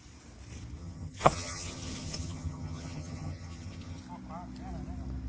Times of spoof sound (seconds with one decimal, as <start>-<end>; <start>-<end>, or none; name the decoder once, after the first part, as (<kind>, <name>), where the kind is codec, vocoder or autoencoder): 0.8-4.0 (vocoder, HiFi-GAN)